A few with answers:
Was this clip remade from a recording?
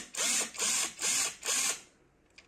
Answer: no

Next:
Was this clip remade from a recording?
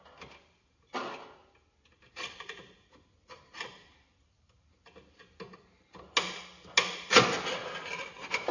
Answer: no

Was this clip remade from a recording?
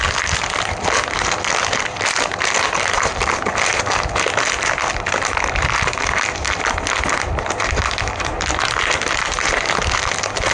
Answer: no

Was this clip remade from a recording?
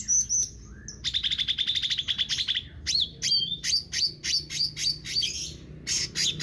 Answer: no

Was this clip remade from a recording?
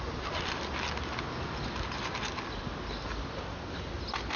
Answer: no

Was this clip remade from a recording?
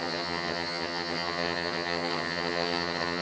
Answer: yes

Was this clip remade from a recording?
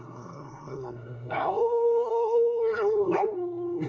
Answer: yes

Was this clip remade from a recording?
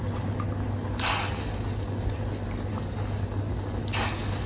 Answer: no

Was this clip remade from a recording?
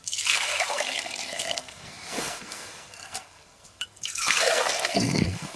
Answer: yes